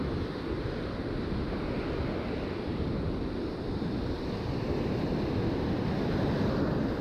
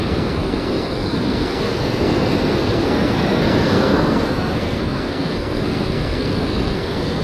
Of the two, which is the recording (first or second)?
first